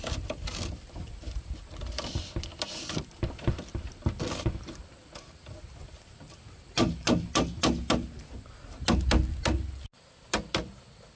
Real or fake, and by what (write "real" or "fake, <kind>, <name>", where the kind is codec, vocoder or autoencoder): real